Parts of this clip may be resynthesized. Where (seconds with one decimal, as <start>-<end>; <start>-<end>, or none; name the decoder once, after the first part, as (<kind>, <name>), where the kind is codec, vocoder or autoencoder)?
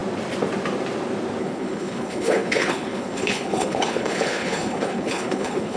1.4-5.8 (codec, HILCodec)